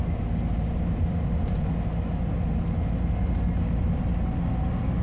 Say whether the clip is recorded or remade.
recorded